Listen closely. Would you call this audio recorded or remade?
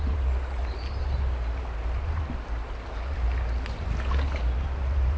recorded